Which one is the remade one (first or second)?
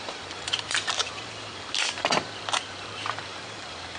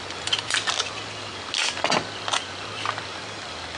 first